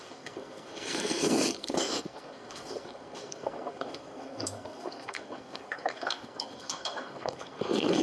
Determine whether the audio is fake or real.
fake